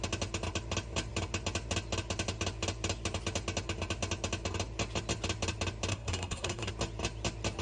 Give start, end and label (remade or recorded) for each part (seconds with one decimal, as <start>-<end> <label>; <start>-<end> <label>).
0.0-5.9 recorded; 5.9-6.7 remade; 6.7-7.6 recorded